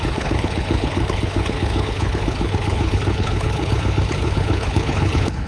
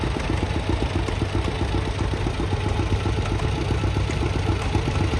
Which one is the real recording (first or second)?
second